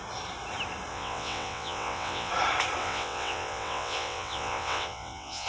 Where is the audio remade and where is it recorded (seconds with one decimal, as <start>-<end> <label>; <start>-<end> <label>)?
0.0-0.9 recorded; 0.9-2.3 remade; 2.3-2.8 recorded; 2.8-5.5 remade